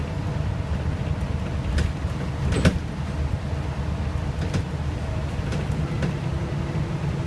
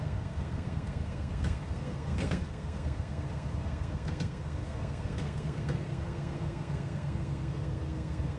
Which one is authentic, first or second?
first